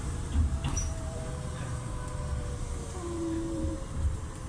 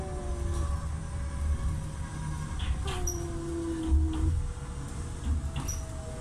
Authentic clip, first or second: second